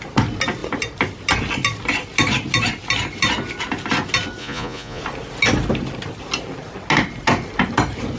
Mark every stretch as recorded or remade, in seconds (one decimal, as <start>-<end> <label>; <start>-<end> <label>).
0.0-4.4 recorded; 4.4-5.0 remade; 5.0-8.2 recorded